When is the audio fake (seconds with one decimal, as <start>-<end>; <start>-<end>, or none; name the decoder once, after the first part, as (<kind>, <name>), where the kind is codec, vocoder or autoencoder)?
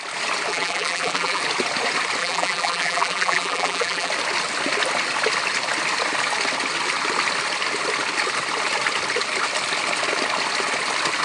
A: 0.5-1.4 (vocoder, BigVGAN v2); 2.2-4.1